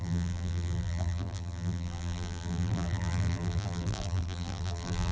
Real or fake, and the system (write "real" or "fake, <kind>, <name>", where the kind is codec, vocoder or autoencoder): fake, vocoder, BigVGAN v2